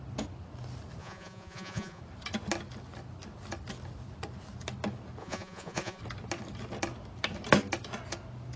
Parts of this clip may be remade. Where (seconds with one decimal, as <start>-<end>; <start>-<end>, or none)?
1.0-2.0; 5.2-6.0